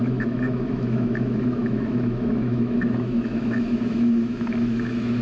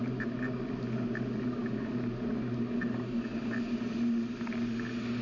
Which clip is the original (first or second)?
second